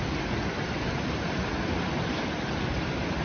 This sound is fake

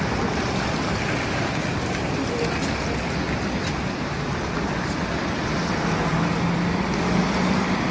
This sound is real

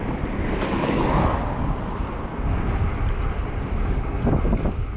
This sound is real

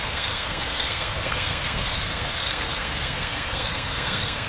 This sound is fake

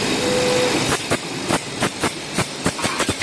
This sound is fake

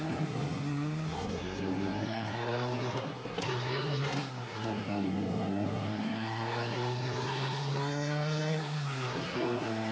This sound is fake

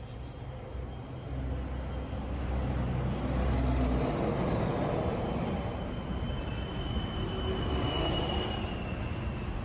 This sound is real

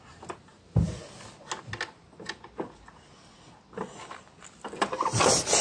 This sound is real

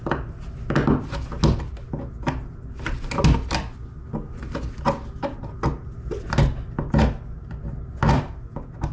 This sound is real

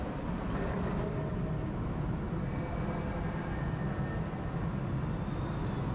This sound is real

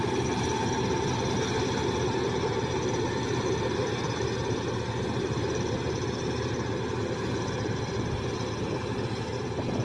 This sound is real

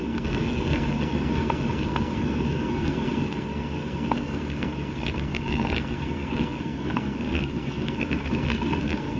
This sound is fake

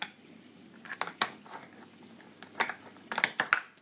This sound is real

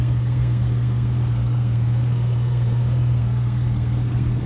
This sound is fake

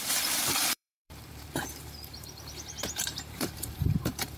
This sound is fake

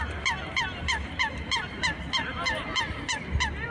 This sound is real